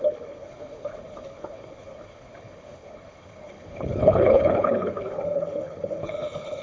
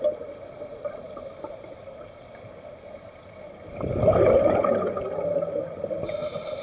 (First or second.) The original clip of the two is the second